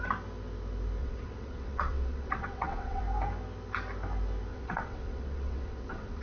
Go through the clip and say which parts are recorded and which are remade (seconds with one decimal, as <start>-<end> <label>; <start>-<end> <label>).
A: 0.0-1.0 recorded; 1.0-3.0 remade; 3.0-4.5 recorded; 4.5-6.2 remade